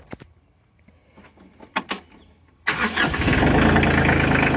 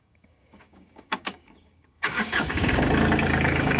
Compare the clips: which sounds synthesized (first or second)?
second